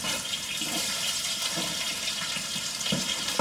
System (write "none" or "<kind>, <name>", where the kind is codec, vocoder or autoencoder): vocoder, BigVGAN v2